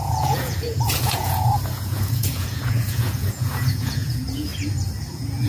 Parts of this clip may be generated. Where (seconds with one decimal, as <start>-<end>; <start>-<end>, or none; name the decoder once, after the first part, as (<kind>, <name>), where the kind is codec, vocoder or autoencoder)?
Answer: 0.0-4.5 (vocoder, Vocos); 5.1-5.5